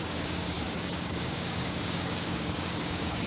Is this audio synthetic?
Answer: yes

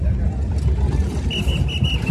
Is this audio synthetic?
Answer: no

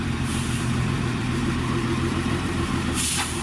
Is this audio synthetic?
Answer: yes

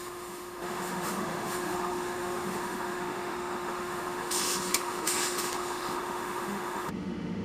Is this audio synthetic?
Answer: yes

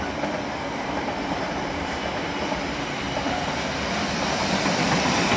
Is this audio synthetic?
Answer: no